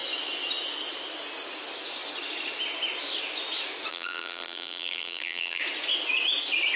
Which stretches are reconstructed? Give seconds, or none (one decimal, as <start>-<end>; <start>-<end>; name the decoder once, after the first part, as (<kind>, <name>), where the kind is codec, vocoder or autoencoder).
3.9-5.6 (vocoder, BigVGAN v2)